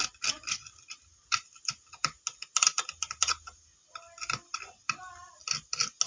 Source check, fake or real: real